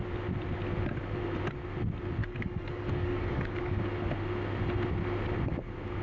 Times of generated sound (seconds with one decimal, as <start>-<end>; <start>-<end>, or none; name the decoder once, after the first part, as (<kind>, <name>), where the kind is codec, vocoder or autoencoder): 2.2-3.8 (codec, DAC)